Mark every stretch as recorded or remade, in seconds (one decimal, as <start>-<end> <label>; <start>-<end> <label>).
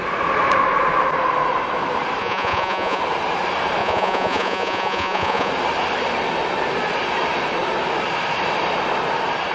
0.0-2.2 recorded; 2.2-3.0 remade; 3.0-3.8 recorded; 3.8-5.5 remade; 5.5-9.5 recorded